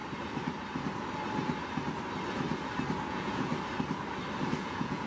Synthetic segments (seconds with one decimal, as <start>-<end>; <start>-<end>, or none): 3.1-3.5; 4.5-5.1